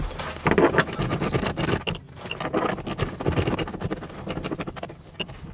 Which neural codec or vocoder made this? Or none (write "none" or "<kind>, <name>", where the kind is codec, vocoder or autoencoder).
none